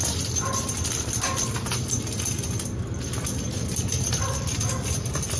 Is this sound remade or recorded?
recorded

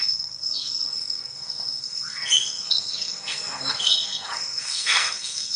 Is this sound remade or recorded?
remade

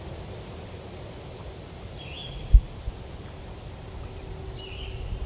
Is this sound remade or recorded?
recorded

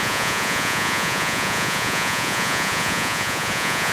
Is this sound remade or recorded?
remade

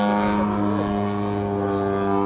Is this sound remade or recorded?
recorded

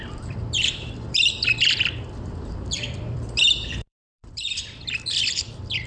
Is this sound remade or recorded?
remade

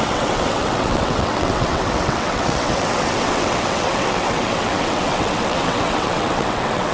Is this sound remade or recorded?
remade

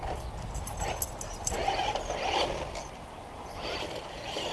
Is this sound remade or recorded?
recorded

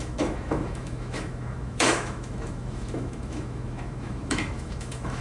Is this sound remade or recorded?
remade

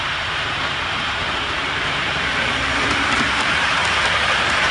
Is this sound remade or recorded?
remade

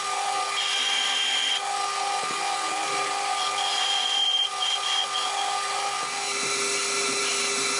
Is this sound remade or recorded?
recorded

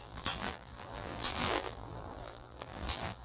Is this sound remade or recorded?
remade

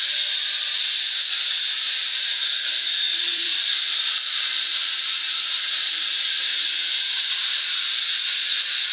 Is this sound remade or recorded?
remade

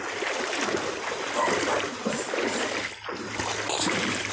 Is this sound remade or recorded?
recorded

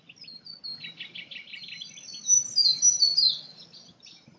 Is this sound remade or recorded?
recorded